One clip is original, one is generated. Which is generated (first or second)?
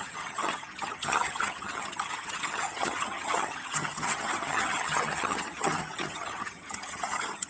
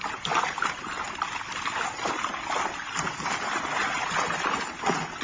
first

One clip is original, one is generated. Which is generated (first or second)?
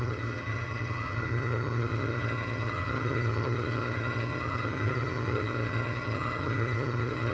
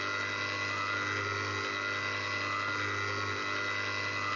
first